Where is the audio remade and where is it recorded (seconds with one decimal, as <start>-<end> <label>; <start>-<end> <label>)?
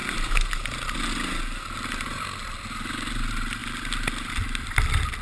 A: 0.0-5.2 recorded